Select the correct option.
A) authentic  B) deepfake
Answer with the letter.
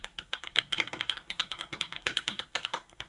B